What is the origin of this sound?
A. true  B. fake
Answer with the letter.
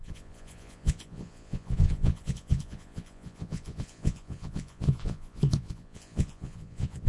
B